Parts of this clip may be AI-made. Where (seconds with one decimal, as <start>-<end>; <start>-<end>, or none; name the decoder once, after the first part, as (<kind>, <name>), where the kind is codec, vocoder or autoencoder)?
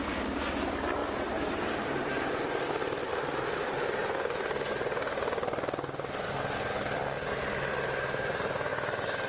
none